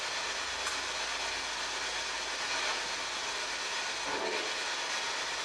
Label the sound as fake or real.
real